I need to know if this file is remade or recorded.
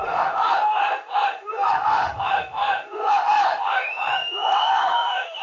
remade